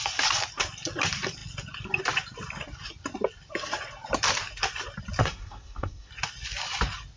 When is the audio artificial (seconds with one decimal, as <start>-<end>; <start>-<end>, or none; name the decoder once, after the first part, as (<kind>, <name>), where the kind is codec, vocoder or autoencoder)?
5.2-6.1 (codec, SNAC)